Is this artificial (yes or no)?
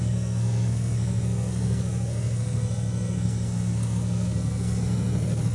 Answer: yes